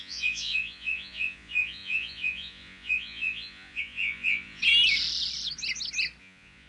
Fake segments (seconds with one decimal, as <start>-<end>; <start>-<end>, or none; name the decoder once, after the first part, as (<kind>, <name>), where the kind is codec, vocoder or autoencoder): 0.0-4.6 (vocoder, Vocos); 6.2-6.7